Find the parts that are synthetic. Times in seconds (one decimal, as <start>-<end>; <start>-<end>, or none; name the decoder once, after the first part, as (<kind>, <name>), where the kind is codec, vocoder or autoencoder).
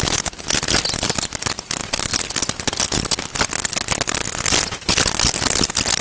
none